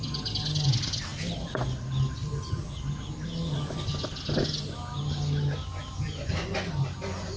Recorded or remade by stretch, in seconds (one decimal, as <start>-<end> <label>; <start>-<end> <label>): 0.0-7.4 recorded